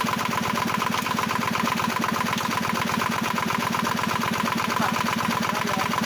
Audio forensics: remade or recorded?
recorded